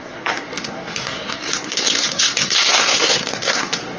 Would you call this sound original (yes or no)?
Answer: no